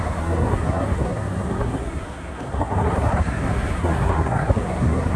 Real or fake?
fake